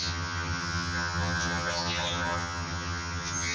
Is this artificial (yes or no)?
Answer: yes